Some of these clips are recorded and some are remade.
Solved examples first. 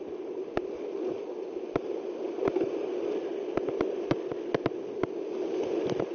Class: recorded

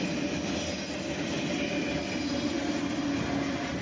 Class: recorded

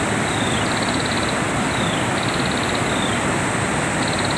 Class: recorded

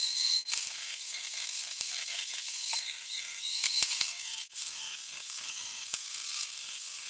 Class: remade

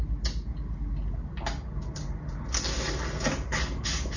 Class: recorded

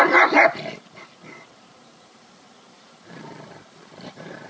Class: remade